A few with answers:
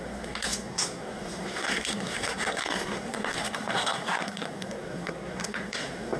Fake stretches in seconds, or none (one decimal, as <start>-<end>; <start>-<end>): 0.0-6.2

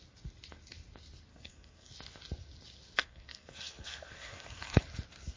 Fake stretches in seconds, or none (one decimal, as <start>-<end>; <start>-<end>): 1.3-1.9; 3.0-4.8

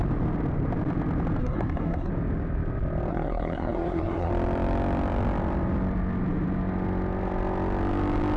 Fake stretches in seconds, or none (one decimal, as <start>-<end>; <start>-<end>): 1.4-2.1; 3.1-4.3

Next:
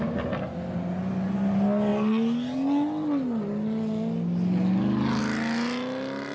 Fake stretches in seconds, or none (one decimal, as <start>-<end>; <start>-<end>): none

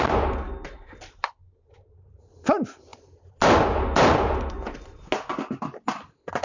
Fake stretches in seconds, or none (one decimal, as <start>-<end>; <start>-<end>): none